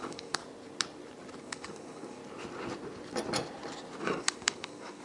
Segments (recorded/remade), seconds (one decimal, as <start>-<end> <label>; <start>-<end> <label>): 0.0-0.4 remade; 0.4-1.4 recorded; 1.4-2.2 remade; 2.2-4.0 recorded; 4.0-5.0 remade